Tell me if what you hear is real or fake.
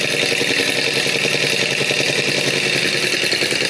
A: real